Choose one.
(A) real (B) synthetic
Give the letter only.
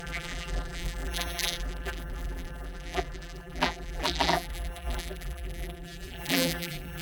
B